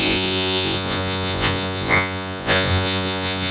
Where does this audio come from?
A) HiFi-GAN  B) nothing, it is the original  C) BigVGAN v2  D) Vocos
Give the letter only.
D